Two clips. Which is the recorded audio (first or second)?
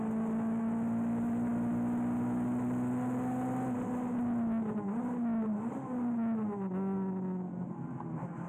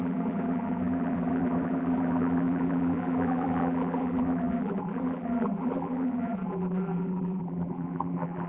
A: first